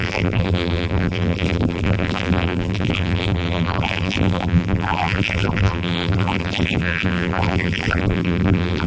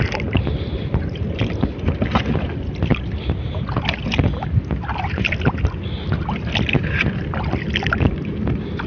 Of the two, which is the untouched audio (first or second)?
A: second